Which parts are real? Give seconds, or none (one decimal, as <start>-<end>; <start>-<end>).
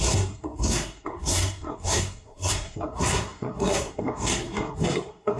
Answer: none